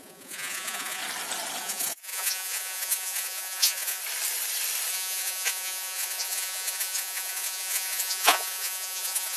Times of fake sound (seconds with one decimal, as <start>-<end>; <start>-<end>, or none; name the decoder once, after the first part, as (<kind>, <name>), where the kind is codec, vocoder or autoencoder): 0.0-1.0 (vocoder, Vocos); 1.6-4.0; 4.9-9.4